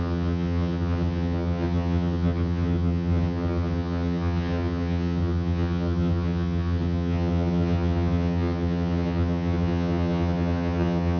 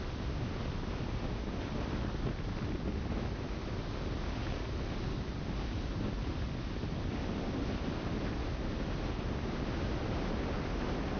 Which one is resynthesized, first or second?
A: first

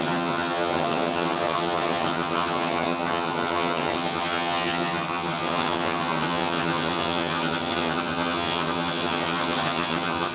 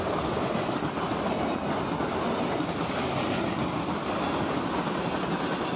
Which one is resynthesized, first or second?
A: first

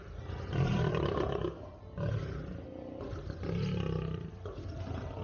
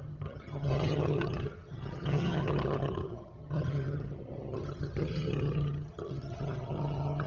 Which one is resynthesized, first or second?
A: second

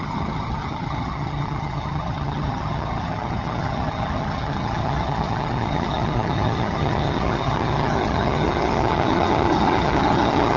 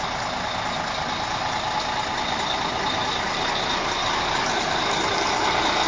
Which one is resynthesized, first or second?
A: first